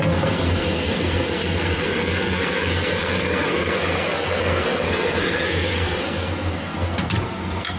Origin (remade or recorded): remade